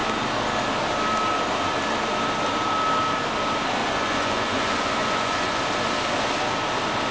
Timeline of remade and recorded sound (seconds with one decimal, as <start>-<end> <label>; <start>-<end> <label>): 0.0-3.8 recorded; 3.8-5.6 remade; 5.6-7.1 recorded